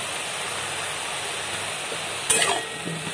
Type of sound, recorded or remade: recorded